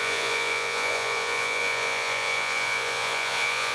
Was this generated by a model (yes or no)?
yes